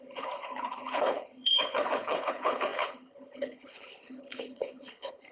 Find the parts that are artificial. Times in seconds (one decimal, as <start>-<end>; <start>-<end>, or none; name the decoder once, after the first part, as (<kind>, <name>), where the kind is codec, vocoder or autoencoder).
0.0-5.3 (codec, HILCodec)